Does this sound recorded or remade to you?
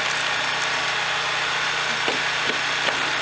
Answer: recorded